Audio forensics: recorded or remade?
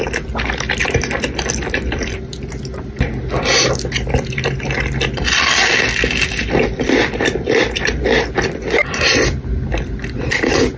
recorded